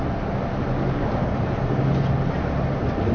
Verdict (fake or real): real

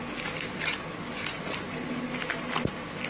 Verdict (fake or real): real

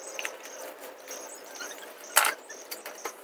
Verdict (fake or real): fake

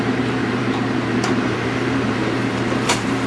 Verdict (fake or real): fake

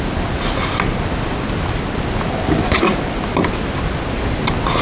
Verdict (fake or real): real